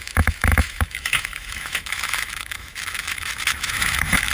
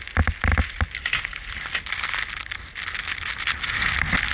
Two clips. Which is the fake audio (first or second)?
first